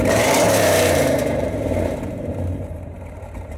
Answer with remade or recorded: remade